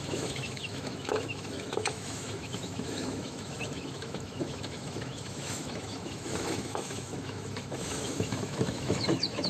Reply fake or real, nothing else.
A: fake